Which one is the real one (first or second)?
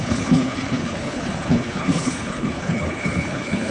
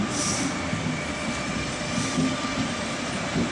second